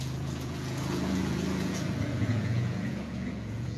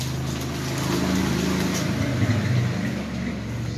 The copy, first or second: first